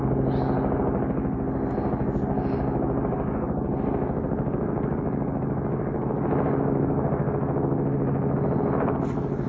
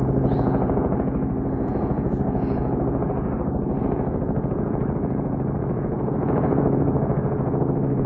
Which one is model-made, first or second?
second